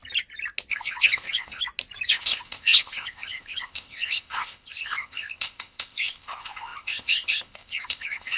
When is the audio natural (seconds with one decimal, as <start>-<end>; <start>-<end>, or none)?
0.0-0.7; 1.6-2.1